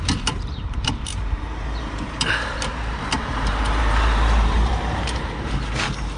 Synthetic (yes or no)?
yes